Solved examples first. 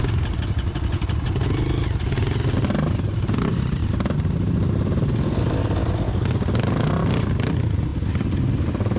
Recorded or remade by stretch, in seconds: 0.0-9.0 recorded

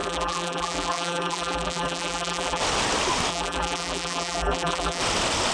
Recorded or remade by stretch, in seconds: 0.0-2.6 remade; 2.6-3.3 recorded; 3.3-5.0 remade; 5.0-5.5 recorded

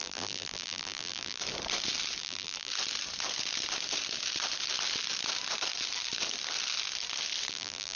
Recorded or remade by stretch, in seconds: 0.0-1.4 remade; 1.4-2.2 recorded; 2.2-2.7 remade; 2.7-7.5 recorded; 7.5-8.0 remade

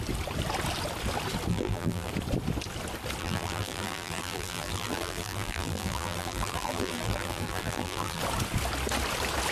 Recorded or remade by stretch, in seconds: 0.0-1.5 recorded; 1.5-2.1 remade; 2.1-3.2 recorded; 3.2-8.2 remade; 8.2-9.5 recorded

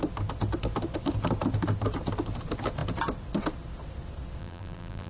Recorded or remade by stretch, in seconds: 0.0-4.4 recorded; 4.4-5.1 remade